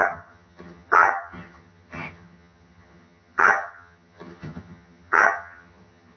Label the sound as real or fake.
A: fake